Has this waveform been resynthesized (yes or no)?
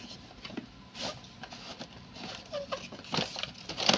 no